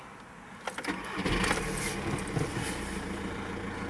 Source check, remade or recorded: recorded